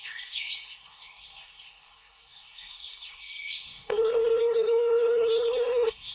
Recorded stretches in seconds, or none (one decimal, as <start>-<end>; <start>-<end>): none

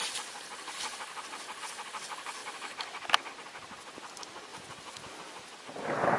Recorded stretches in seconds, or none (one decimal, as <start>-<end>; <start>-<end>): 0.0-6.2

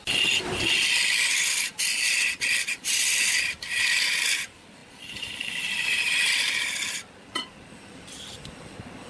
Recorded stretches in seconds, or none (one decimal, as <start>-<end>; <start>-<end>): 0.0-9.1